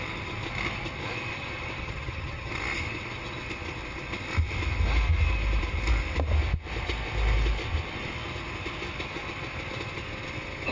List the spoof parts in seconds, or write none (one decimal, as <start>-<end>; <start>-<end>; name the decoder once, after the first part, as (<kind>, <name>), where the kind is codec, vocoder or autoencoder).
1.8-2.5 (vocoder, HiFi-GAN)